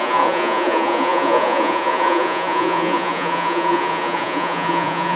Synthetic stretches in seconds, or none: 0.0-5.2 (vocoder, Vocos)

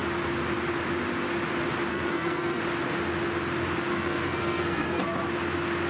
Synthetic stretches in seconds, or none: 1.9-2.6 (codec, SNAC); 3.9-5.0

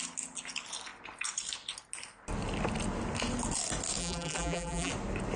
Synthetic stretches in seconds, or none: 4.0-4.9 (vocoder, BigVGAN v2)

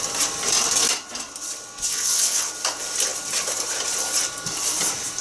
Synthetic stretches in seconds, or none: 1.9-2.5 (vocoder, WaveNeXt)